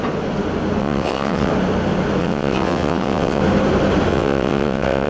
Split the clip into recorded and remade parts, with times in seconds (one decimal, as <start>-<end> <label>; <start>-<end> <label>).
0.0-0.8 recorded; 0.8-1.5 remade; 1.5-2.2 recorded; 2.2-3.4 remade; 3.4-4.1 recorded; 4.1-5.1 remade